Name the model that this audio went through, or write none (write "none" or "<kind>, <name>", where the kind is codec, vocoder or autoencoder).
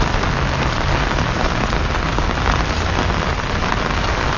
none